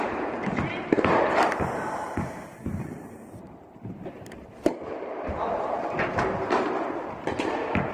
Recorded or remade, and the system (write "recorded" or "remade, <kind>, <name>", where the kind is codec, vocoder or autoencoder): remade, vocoder, BigVGAN v2